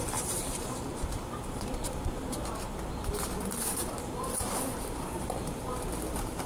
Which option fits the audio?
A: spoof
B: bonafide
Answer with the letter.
A